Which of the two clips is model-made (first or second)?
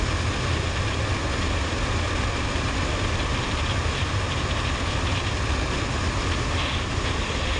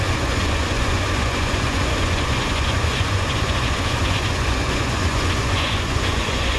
second